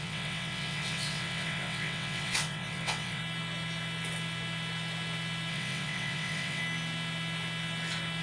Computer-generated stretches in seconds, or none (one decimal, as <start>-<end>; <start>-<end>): 0.0-3.2; 5.5-6.6